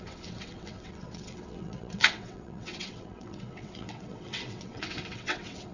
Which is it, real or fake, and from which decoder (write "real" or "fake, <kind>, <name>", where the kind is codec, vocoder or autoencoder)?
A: fake, vocoder, WaveNeXt